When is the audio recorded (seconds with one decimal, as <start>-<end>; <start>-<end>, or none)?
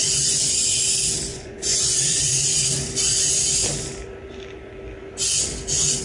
0.6-1.3; 2.3-6.0